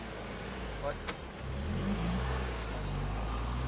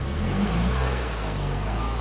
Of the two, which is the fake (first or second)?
second